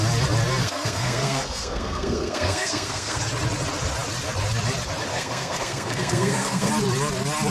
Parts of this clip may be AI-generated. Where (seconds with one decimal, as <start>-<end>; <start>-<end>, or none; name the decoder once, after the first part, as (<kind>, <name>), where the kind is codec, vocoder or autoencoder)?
0.6-3.2 (codec, SNAC); 5.1-6.7